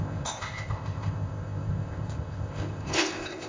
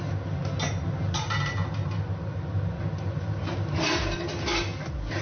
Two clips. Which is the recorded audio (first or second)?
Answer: second